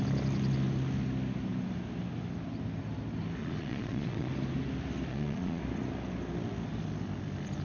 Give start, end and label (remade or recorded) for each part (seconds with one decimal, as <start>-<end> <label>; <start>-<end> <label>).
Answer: 0.0-3.4 recorded; 3.4-4.3 remade; 4.3-5.1 recorded; 5.1-5.6 remade; 5.6-7.6 recorded